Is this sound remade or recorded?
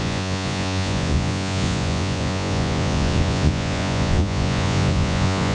remade